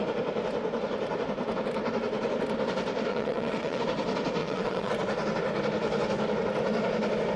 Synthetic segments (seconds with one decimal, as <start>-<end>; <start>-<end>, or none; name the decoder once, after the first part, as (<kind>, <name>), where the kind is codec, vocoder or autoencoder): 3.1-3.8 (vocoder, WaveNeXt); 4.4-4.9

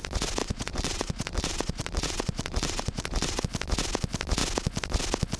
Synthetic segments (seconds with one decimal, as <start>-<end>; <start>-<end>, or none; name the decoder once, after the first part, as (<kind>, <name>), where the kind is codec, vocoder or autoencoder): 0.4-3.4 (vocoder, WaveNeXt)

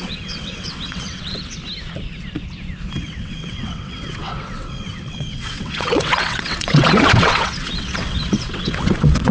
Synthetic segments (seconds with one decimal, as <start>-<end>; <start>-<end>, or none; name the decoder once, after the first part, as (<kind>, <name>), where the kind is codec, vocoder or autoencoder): 0.0-1.6 (vocoder, WaveNeXt); 3.0-9.3

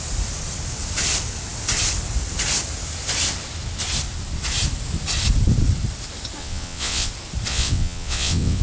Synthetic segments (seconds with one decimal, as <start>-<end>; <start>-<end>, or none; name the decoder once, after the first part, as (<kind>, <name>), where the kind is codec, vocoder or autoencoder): 6.4-7.1 (vocoder, WaveNeXt); 7.5-8.6